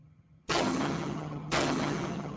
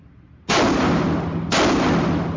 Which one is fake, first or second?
first